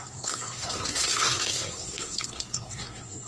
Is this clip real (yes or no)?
no